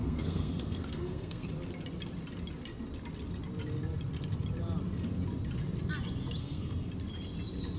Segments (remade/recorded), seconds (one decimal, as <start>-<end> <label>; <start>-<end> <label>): 0.0-1.5 remade; 1.5-6.4 recorded; 6.4-6.9 remade; 6.9-7.8 recorded